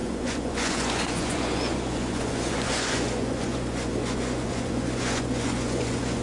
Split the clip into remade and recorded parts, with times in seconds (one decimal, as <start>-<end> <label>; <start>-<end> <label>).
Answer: 0.0-6.2 remade